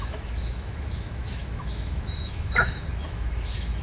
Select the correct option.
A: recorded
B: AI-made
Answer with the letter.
B